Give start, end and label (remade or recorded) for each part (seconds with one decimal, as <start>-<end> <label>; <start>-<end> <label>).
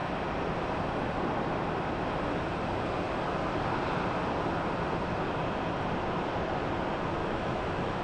0.0-7.2 recorded; 7.2-8.0 remade